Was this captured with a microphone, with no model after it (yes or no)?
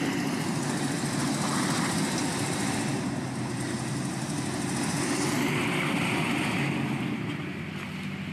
yes